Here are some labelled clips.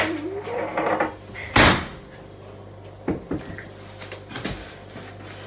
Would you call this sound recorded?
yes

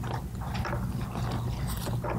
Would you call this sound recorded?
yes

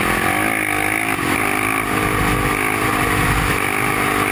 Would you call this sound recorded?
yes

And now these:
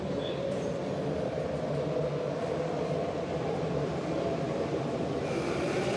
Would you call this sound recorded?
no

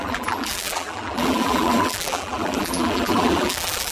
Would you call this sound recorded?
no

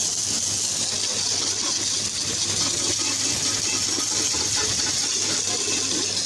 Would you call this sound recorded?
yes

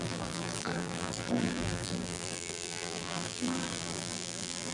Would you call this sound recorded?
no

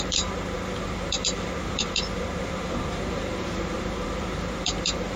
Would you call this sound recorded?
no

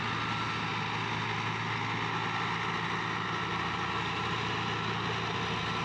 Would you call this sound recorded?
yes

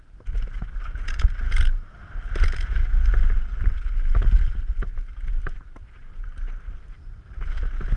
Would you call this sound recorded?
yes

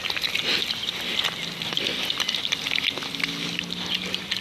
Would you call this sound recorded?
yes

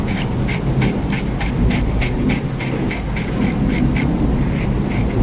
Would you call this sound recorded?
yes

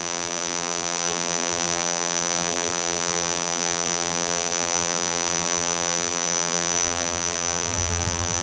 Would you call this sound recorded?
no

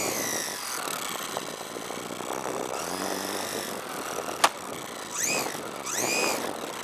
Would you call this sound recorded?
yes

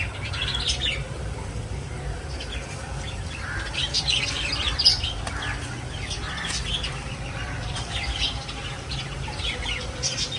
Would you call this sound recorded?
no